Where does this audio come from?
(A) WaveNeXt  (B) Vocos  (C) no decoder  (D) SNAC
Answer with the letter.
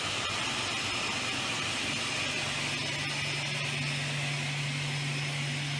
C